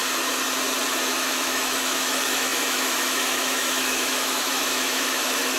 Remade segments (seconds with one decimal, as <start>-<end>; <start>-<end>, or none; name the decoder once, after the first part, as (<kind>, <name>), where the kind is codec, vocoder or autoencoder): 1.1-5.6 (autoencoder, DAC-VAE)